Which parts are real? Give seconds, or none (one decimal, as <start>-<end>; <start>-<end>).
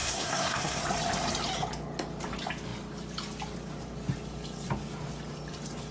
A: 0.8-5.9